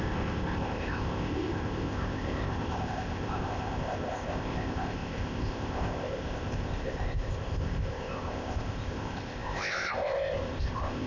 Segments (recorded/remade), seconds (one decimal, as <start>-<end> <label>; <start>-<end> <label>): 0.0-11.1 remade